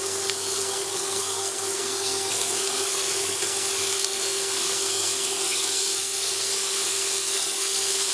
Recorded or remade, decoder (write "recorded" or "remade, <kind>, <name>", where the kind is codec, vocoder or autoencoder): remade, codec, SNAC